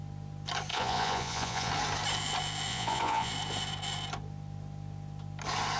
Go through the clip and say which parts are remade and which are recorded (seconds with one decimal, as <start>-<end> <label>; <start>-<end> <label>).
0.0-0.7 recorded; 0.7-1.7 remade; 1.7-2.7 recorded; 2.7-3.3 remade; 3.3-5.8 recorded